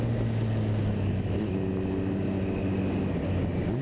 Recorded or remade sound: recorded